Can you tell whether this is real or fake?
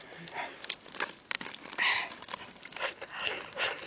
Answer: real